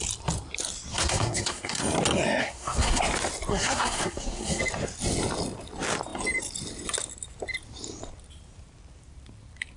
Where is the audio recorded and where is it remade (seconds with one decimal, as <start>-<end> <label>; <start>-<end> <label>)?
0.0-0.9 recorded; 0.9-1.8 remade; 1.8-2.4 recorded; 2.4-3.0 remade; 3.0-3.5 recorded; 3.5-4.6 remade; 4.6-9.8 recorded